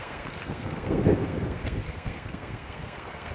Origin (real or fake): fake